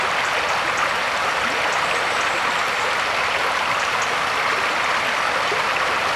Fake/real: real